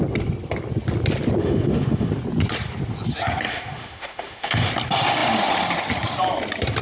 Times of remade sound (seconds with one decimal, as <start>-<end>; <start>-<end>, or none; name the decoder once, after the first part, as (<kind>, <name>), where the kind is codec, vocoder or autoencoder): 1.4-2.1 (autoencoder, DAC-VAE); 3.5-4.7

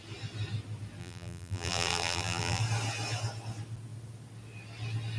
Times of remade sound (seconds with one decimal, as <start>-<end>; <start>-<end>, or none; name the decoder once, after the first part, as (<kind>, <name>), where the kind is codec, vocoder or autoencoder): 1.0-2.6 (vocoder, BigVGAN v2)

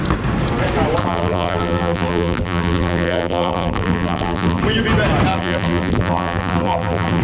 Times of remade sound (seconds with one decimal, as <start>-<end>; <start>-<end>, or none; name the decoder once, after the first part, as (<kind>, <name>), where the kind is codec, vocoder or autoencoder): 1.0-4.6 (vocoder, BigVGAN v2); 5.3-7.2

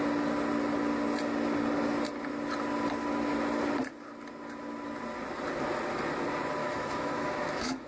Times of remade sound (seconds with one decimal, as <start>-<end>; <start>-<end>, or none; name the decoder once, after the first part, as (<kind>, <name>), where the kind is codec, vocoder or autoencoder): 6.6-7.9 (autoencoder, DAC-VAE)

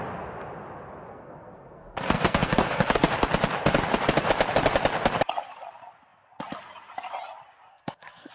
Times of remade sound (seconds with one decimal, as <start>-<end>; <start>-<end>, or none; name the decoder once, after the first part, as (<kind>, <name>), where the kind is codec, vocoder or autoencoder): 1.1-3.1 (codec, SNAC); 7.7-8.3

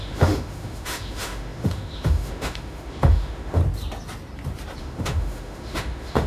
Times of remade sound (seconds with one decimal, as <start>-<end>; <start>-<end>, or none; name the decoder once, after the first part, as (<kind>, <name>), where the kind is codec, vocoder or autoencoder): 0.0-3.6 (autoencoder, DAC-VAE); 4.8-6.3